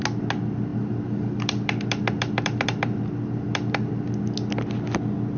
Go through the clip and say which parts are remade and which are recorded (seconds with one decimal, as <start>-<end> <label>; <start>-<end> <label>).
0.0-0.7 recorded; 0.7-3.9 remade; 3.9-5.4 recorded